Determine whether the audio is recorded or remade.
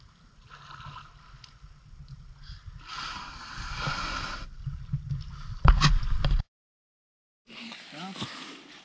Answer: recorded